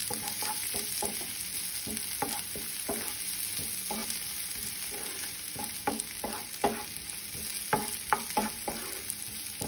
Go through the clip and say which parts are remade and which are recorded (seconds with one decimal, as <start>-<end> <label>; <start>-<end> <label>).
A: 0.0-1.1 remade; 1.1-4.0 recorded; 4.0-5.6 remade; 5.6-9.7 recorded